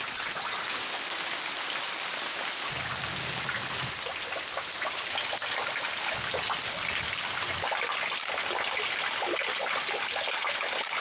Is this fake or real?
real